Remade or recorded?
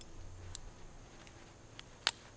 recorded